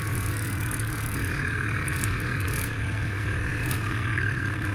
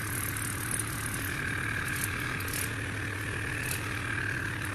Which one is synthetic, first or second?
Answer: first